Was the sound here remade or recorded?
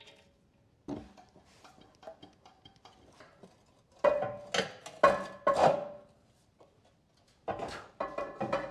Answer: recorded